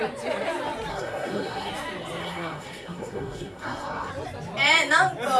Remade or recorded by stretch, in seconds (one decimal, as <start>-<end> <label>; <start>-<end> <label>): 0.0-0.9 recorded; 0.9-1.7 remade; 1.7-2.2 recorded; 2.2-4.1 remade; 4.1-5.4 recorded